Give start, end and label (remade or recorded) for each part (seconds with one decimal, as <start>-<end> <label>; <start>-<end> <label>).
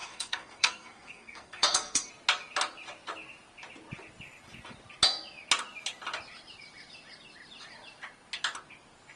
0.0-2.1 remade; 2.1-9.2 recorded